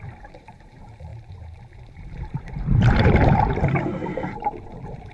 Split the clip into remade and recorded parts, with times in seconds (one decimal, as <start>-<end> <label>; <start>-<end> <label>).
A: 0.0-5.1 remade